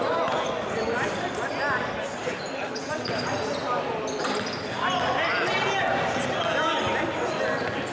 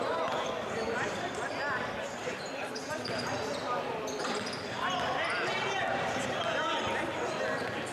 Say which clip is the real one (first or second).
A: first